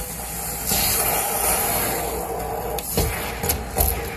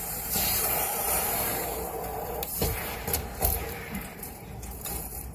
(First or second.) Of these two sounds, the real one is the first